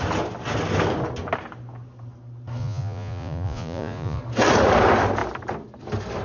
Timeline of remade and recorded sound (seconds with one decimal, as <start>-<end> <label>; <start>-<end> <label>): 0.0-2.6 recorded; 2.6-4.2 remade; 4.2-6.2 recorded